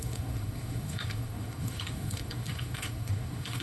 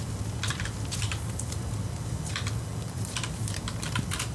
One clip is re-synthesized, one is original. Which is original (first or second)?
second